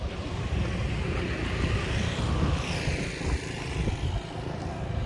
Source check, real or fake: real